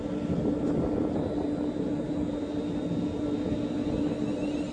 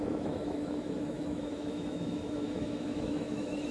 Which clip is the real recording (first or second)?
first